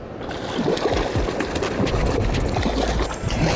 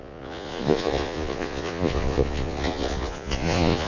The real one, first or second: first